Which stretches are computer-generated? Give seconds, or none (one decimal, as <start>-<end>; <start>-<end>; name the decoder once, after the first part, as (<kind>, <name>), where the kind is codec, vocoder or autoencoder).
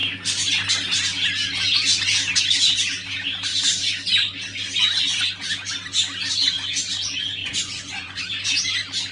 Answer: 7.4-8.2 (vocoder, Vocos)